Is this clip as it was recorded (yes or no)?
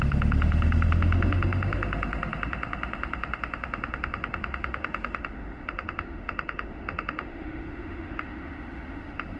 no